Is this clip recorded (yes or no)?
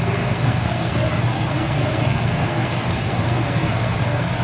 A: no